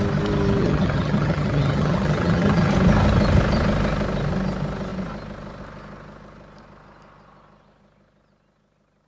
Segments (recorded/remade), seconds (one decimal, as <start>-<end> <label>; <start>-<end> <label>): 0.0-0.6 recorded; 0.6-2.7 remade; 2.7-9.1 recorded